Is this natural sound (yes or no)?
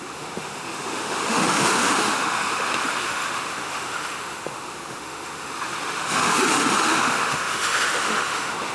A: no